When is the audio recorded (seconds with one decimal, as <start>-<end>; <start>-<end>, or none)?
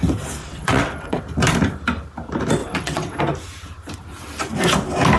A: 0.0-0.4; 1.2-2.6; 3.2-5.2